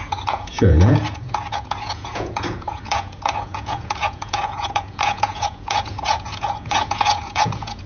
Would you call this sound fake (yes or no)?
yes